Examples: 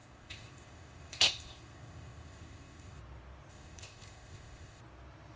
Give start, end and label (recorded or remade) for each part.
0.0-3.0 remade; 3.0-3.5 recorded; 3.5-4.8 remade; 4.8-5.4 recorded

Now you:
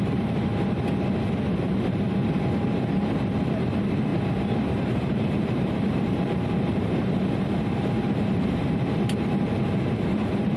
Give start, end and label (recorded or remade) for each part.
0.0-0.5 remade; 0.5-1.6 recorded; 1.6-4.1 remade; 4.1-4.8 recorded; 4.8-10.6 remade

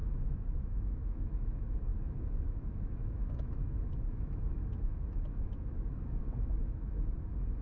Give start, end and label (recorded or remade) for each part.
0.0-7.6 remade

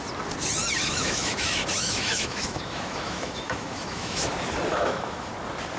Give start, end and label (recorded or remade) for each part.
0.0-0.8 recorded; 0.8-4.3 remade; 4.3-4.7 recorded; 4.7-5.3 remade; 5.3-5.8 recorded